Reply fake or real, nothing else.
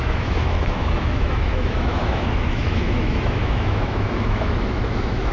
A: fake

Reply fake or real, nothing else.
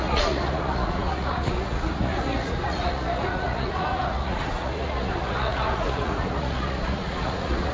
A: fake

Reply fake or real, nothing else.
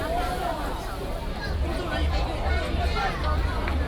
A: real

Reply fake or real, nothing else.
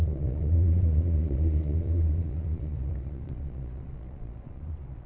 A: fake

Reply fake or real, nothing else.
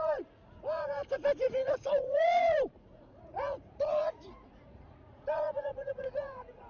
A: fake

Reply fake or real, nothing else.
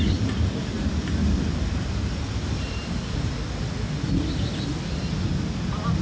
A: fake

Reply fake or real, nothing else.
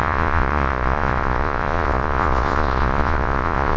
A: fake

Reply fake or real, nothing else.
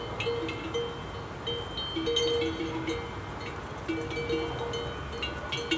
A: real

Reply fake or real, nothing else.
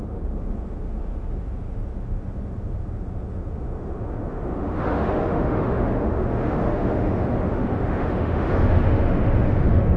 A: fake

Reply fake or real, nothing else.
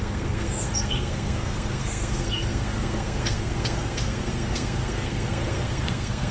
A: fake